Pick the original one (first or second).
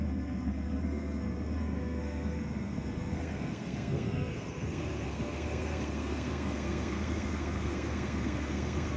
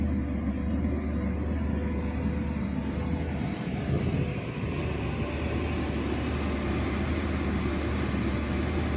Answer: second